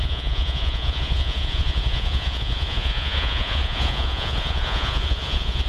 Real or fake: fake